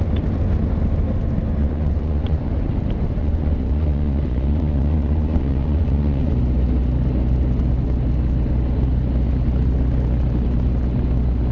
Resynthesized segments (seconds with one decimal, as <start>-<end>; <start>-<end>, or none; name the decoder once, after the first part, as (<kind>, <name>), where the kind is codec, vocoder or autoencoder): 1.6-2.5 (vocoder, Vocos); 3.2-6.3